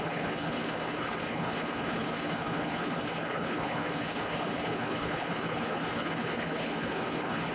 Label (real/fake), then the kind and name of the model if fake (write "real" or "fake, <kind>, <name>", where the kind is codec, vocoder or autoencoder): fake, codec, HILCodec